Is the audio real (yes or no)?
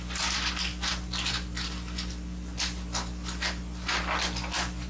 yes